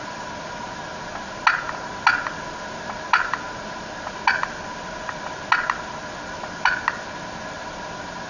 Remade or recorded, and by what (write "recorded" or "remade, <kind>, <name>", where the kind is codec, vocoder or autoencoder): recorded